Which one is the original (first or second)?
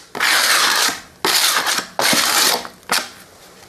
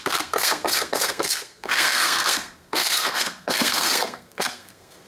first